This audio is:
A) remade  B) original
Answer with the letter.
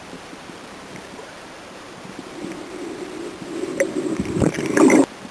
A